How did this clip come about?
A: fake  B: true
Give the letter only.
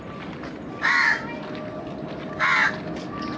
B